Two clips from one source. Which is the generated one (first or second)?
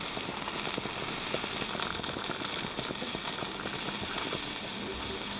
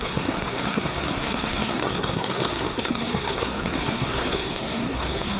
second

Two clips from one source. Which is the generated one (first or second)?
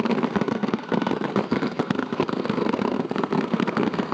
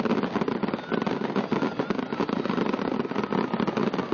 first